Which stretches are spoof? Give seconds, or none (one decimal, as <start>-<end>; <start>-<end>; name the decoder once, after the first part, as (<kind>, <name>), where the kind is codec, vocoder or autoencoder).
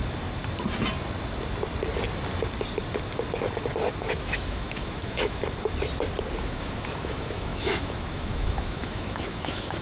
4.0-5.4 (autoencoder, DAC-VAE); 6.4-9.8